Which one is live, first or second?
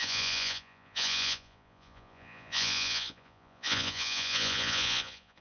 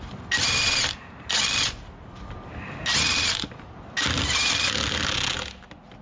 second